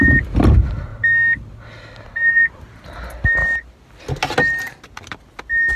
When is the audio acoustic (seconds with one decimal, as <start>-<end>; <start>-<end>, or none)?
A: 0.0-5.8